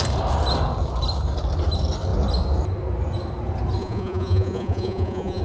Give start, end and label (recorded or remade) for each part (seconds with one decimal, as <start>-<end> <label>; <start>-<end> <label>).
0.0-3.8 recorded; 3.8-5.4 remade